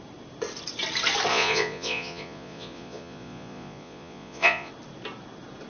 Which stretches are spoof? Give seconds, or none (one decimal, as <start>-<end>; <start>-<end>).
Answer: 1.3-4.7